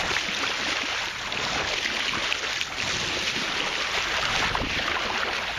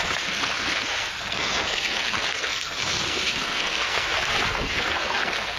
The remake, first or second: second